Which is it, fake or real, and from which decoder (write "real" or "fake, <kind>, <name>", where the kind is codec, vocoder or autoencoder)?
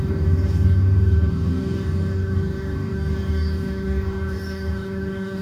fake, codec, DAC